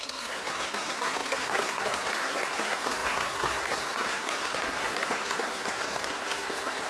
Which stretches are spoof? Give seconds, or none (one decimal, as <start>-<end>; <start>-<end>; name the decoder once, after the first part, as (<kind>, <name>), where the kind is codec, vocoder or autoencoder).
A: 0.0-6.9 (codec, SNAC)